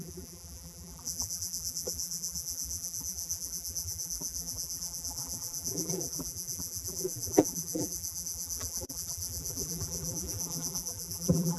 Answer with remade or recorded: remade